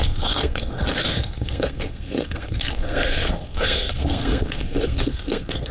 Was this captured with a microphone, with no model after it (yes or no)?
no